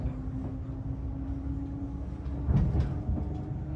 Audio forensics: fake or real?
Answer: real